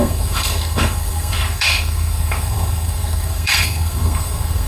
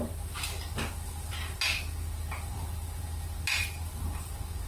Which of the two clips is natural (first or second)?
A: second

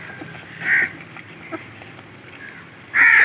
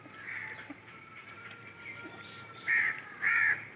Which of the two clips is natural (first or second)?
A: first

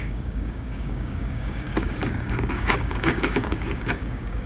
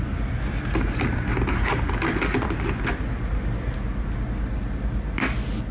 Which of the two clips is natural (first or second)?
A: second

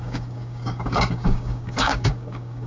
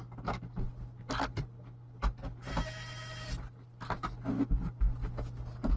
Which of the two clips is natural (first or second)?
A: second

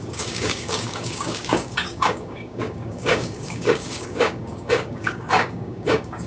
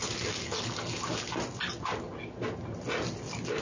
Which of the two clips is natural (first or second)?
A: second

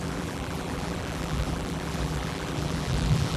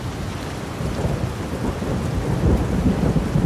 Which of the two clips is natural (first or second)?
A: second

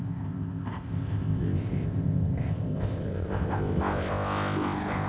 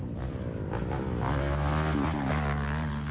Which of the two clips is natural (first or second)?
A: second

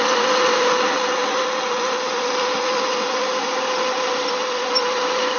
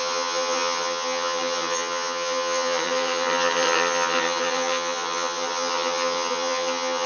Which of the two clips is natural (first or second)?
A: first